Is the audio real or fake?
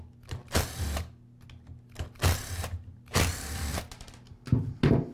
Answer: real